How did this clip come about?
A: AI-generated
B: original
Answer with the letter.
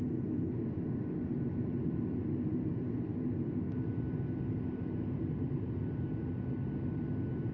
B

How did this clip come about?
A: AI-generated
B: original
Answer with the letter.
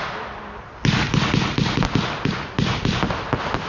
B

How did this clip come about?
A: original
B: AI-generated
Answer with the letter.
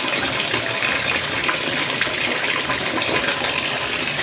A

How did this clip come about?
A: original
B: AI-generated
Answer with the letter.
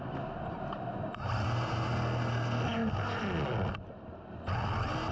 A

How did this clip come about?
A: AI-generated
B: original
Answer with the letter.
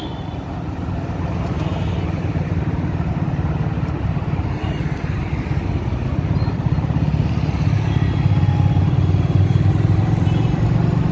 B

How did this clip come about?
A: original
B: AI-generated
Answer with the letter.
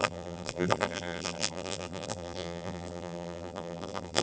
B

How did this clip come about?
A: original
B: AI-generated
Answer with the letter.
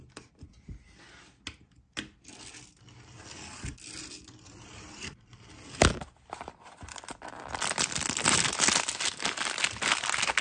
A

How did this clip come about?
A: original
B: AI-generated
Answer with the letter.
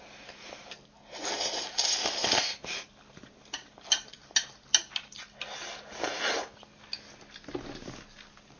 A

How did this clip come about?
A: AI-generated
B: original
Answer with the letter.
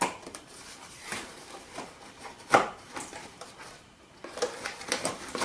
A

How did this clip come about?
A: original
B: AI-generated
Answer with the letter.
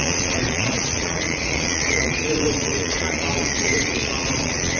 B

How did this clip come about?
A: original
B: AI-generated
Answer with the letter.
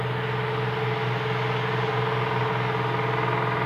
A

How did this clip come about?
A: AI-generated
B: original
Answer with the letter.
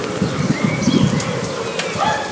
B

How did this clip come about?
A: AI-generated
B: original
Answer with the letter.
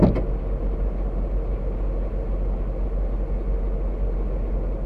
B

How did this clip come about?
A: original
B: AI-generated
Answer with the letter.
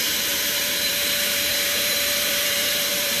B